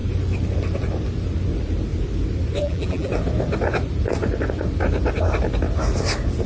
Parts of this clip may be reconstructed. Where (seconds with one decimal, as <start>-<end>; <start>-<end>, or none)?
2.6-3.1